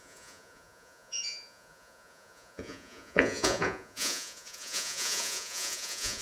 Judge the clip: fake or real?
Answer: fake